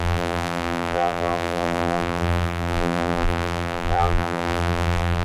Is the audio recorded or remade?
remade